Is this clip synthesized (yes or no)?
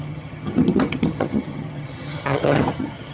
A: yes